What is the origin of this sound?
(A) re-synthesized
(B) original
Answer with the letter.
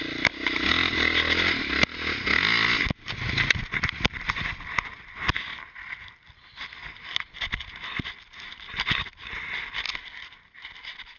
B